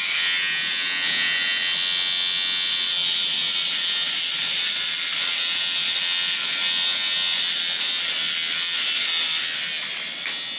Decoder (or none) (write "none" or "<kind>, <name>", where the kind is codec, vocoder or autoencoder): none